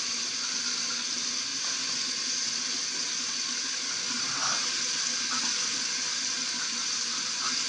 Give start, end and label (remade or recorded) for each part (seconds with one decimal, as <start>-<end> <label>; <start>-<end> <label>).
0.0-7.7 recorded